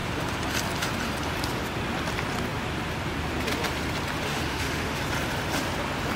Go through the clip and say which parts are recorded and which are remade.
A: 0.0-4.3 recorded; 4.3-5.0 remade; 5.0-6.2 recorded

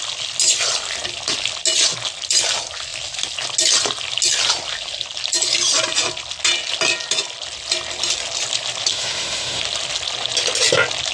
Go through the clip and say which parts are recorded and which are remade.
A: 0.0-8.9 recorded; 8.9-9.6 remade; 9.6-11.1 recorded

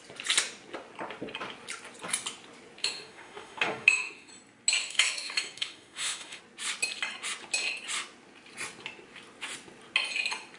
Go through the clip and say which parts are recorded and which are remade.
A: 0.0-2.8 recorded; 2.8-4.3 remade; 4.3-4.8 recorded; 4.8-6.4 remade; 6.4-10.6 recorded

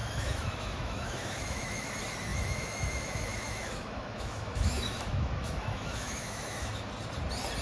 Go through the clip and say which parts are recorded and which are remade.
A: 0.0-1.9 remade; 1.9-2.3 recorded; 2.3-6.9 remade; 6.9-7.6 recorded

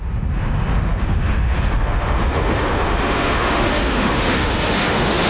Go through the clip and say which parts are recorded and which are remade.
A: 0.0-5.3 remade

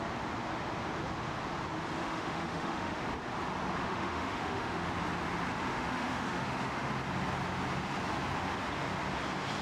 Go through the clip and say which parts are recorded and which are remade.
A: 0.0-2.0 recorded; 2.0-3.0 remade; 3.0-3.8 recorded; 3.8-4.9 remade; 4.9-5.7 recorded; 5.7-6.9 remade; 6.9-9.6 recorded